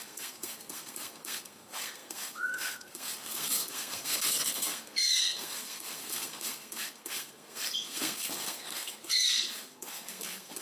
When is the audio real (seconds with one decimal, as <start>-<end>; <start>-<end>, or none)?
none